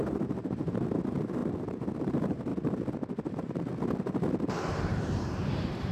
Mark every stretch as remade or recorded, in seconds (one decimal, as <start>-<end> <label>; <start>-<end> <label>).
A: 0.0-1.4 remade; 1.4-2.0 recorded; 2.0-2.5 remade; 2.5-3.3 recorded; 3.3-3.7 remade; 3.7-4.7 recorded; 4.7-5.9 remade